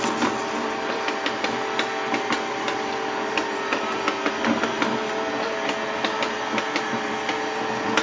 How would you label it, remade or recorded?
recorded